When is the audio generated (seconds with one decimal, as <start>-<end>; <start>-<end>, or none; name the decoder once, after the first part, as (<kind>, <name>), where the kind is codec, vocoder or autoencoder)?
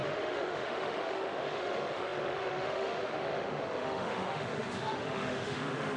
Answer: 0.0-6.0 (autoencoder, DAC-VAE)